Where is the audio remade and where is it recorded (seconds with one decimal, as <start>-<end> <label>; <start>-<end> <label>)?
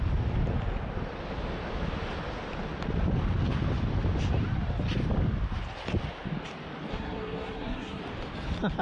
0.0-6.9 recorded; 6.9-8.0 remade; 8.0-8.8 recorded